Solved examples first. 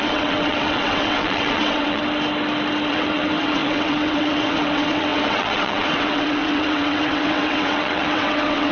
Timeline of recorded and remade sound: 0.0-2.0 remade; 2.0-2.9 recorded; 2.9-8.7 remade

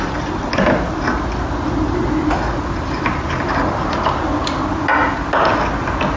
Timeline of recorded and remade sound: 0.0-6.2 recorded

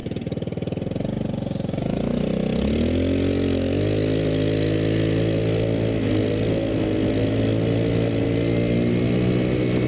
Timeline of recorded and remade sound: 0.0-9.9 recorded

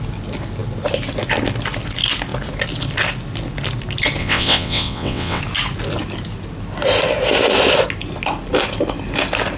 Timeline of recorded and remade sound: 0.0-4.2 recorded; 4.2-5.4 remade; 5.4-9.6 recorded

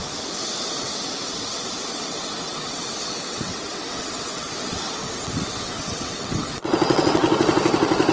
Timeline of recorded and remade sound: 0.0-0.8 recorded; 0.8-7.2 remade; 7.2-8.1 recorded

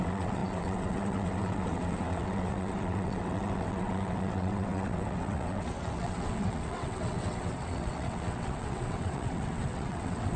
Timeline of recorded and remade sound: 0.0-10.4 remade